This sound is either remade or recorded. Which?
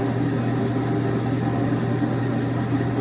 recorded